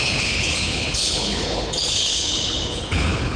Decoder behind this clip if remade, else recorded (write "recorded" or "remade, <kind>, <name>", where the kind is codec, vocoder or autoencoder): remade, codec, HILCodec